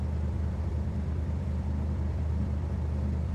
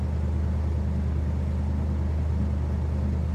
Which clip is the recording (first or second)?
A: second